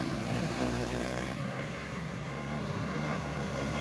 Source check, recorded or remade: remade